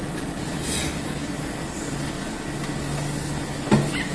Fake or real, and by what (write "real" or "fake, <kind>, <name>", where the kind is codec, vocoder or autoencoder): real